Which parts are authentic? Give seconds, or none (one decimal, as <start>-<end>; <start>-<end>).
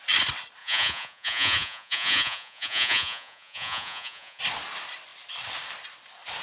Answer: 0.0-0.6; 4.4-6.4